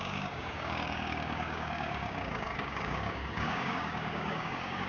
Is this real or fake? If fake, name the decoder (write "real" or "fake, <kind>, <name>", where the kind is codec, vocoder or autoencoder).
fake, codec, DAC